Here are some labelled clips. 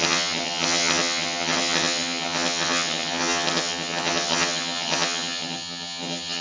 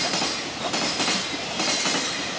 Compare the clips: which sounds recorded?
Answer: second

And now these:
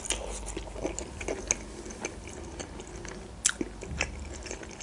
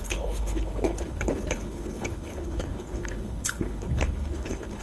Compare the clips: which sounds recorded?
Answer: first